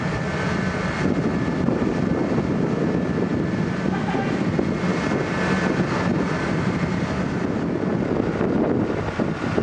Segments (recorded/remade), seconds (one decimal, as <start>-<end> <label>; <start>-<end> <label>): 0.0-9.6 recorded